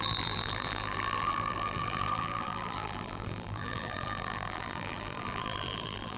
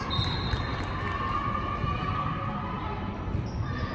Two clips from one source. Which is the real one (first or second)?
second